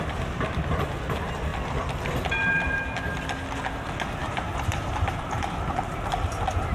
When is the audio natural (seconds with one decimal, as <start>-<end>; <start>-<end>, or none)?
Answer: 0.0-4.2; 5.9-6.7